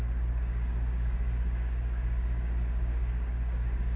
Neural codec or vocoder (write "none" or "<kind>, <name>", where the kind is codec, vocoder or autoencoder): codec, DAC